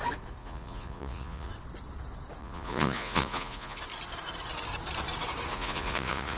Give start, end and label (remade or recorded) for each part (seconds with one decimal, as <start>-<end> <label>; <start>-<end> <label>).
0.0-0.4 recorded; 0.4-1.5 remade; 1.5-2.4 recorded; 2.4-3.8 remade; 3.8-5.5 recorded; 5.5-6.4 remade